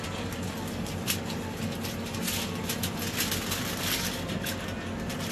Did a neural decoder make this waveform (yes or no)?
no